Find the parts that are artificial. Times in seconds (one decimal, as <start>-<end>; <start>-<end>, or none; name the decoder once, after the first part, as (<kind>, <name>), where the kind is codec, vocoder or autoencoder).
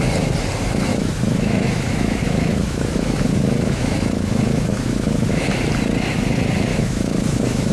0.9-5.5 (autoencoder, DAC-VAE); 6.7-7.7